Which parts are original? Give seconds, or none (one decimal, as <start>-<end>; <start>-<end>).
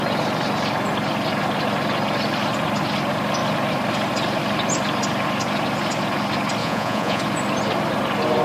0.0-6.6; 7.2-8.4